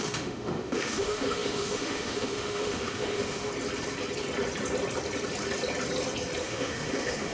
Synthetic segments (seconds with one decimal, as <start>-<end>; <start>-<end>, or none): 0.0-3.5; 6.4-7.3